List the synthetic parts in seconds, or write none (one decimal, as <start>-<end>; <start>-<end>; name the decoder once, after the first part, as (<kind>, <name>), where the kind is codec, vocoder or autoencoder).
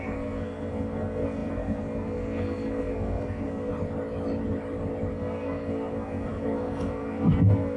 0.0-3.7 (codec, SNAC); 5.1-7.8